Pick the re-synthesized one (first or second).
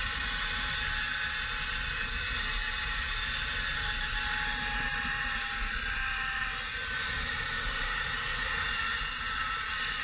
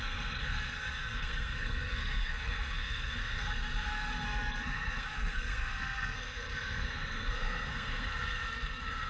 second